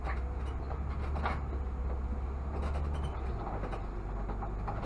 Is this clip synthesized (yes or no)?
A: no